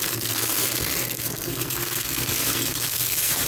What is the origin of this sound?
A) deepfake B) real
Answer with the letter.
A